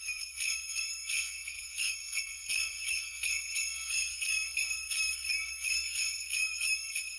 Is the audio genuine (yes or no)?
no